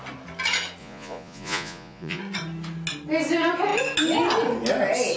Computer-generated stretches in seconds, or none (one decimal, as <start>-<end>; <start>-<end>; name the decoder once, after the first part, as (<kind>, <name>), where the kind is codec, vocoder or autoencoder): 0.8-2.2 (vocoder, Vocos)